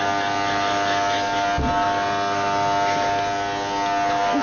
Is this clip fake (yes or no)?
no